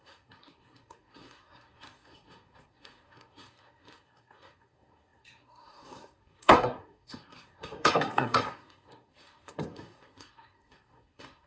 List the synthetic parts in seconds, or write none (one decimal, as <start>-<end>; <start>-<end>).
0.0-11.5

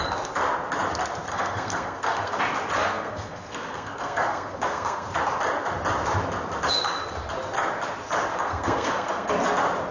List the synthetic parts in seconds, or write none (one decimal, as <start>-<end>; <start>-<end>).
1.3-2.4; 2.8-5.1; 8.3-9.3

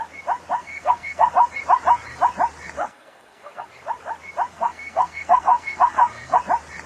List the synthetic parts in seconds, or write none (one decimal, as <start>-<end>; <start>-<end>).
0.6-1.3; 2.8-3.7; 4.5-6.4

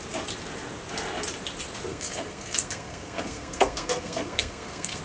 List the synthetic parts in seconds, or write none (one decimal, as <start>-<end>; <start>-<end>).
1.9-5.0

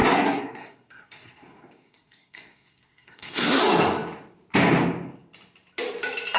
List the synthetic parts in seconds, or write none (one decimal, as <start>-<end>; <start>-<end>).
0.0-3.6

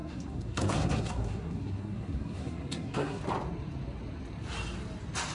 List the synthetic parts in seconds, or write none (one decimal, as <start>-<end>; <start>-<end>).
0.0-3.2

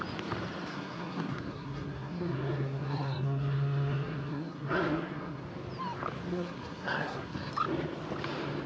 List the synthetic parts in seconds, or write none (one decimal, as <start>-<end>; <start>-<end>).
0.7-5.4; 6.3-7.5

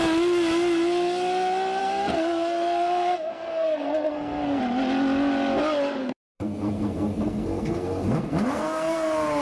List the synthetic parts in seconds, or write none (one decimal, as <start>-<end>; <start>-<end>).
1.8-4.6; 6.0-9.4